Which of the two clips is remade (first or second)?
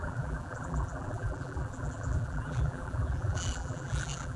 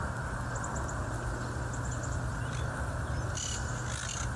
first